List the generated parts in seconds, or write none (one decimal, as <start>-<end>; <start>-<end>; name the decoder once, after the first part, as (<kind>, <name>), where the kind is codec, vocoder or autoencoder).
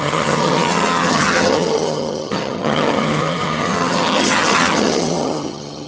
0.0-5.9 (vocoder, HiFi-GAN)